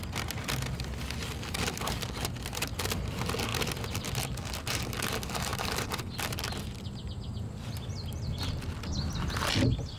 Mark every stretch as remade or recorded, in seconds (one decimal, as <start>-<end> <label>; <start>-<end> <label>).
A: 0.0-10.0 recorded